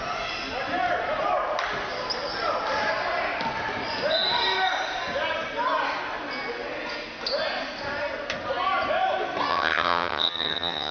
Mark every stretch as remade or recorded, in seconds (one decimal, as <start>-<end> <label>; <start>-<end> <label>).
0.0-9.5 recorded; 9.5-10.9 remade